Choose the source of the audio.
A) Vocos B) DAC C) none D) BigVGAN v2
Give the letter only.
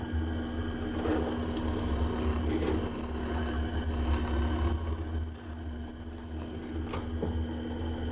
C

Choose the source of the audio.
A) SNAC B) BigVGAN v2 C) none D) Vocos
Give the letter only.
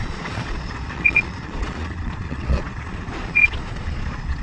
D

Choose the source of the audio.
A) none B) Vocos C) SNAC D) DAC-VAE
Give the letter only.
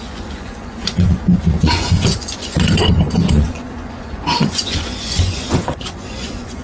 B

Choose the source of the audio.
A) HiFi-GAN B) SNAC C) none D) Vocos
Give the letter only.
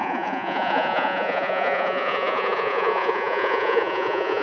D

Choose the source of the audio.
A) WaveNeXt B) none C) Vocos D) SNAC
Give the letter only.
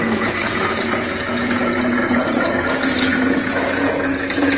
C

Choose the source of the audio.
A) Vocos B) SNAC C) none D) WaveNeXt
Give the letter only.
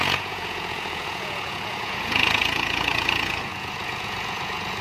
A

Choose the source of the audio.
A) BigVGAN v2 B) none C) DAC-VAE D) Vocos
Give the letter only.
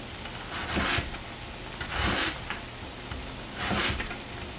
B